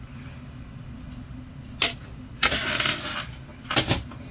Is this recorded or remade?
recorded